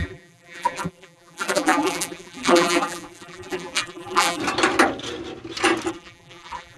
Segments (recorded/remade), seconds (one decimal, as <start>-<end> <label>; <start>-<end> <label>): 0.0-4.4 remade; 4.4-5.9 recorded; 5.9-6.8 remade